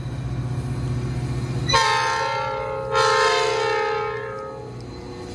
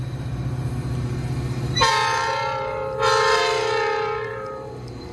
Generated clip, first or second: second